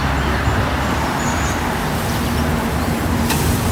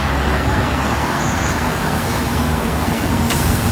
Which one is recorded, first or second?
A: first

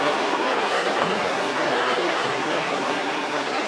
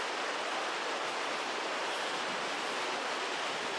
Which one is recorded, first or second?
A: second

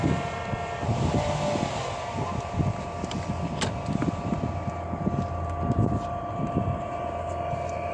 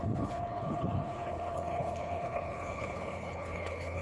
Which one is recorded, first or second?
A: first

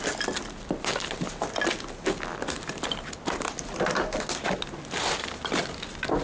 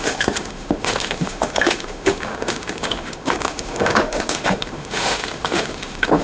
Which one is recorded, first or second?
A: first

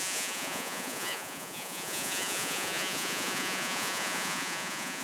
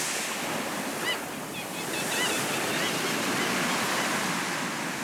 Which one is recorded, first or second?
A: second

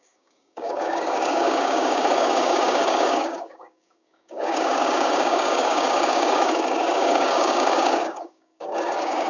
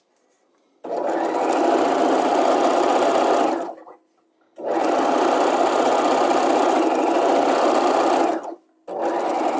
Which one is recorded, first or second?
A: second